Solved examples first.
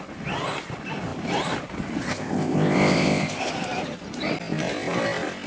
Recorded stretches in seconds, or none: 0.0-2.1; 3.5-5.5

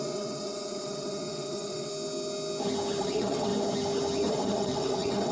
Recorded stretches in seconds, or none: 1.9-3.0; 3.5-4.3

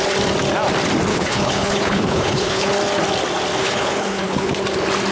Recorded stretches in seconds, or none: 0.0-1.1; 2.7-3.6; 4.5-5.1

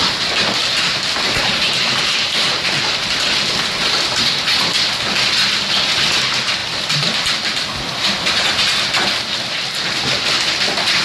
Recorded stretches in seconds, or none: 0.0-0.6; 3.4-11.0

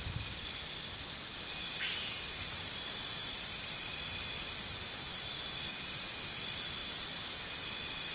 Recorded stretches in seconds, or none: 0.0-8.1